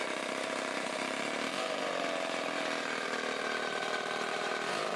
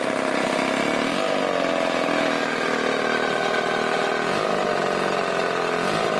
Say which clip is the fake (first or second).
first